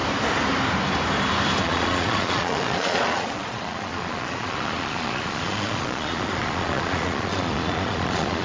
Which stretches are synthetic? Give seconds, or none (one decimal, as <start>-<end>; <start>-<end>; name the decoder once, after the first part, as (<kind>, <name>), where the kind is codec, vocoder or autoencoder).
1.6-8.4 (vocoder, Vocos)